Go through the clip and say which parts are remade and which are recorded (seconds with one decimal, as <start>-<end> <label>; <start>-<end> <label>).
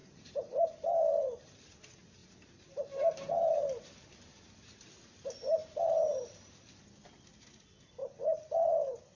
0.0-1.8 remade; 1.8-2.2 recorded; 2.2-4.8 remade; 4.8-5.6 recorded; 5.6-6.6 remade; 6.6-8.0 recorded; 8.0-8.7 remade; 8.7-9.2 recorded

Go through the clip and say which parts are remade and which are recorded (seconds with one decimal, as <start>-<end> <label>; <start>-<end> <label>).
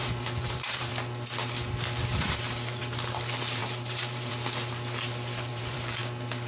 0.0-0.9 remade; 0.9-2.1 recorded; 2.1-2.8 remade; 2.8-3.6 recorded; 3.6-4.3 remade; 4.3-5.5 recorded; 5.5-6.0 remade; 6.0-6.5 recorded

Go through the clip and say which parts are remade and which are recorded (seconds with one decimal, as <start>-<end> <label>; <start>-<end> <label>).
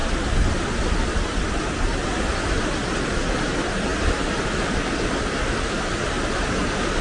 0.0-7.0 recorded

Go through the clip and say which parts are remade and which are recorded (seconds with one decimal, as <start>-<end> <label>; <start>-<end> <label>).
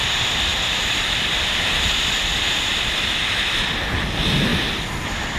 0.0-0.5 recorded; 0.5-3.4 remade; 3.4-4.5 recorded; 4.5-5.4 remade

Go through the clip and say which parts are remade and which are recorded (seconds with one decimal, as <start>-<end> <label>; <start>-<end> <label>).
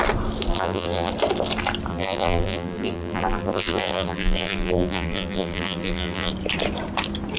0.0-0.5 recorded; 0.5-1.1 remade; 1.1-1.9 recorded; 1.9-6.3 remade; 6.3-7.4 recorded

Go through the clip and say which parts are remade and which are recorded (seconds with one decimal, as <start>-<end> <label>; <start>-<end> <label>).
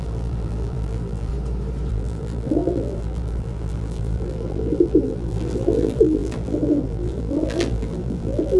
0.0-1.3 remade; 1.3-1.9 recorded; 1.9-8.6 remade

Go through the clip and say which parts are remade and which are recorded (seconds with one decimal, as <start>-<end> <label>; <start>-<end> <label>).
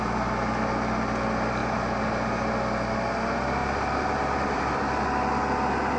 0.0-1.6 recorded; 1.6-2.1 remade; 2.1-3.6 recorded; 3.6-5.1 remade; 5.1-6.0 recorded